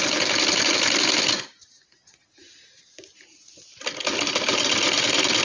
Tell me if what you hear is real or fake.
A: real